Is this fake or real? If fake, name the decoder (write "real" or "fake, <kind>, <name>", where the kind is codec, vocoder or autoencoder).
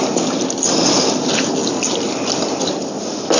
real